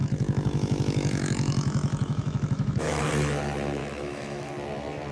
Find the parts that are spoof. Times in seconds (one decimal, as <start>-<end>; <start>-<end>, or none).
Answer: 0.0-3.1; 3.8-4.5